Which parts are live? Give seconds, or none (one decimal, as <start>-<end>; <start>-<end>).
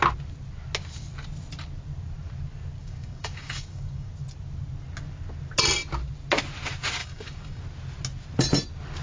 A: 0.0-2.8; 4.1-7.0; 7.6-9.0